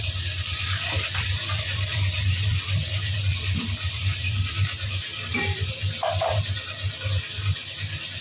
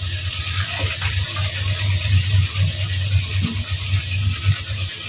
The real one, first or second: second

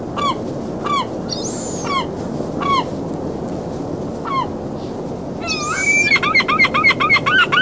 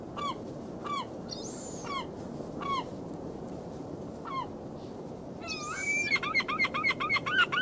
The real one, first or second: first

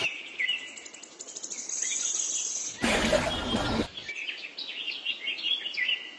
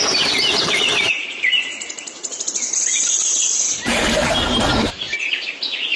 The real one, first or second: first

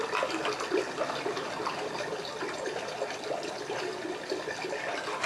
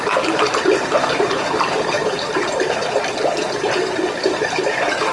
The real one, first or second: first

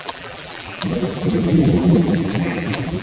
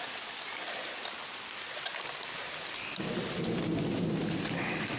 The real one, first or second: second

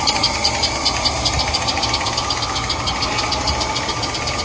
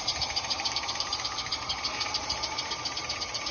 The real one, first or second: first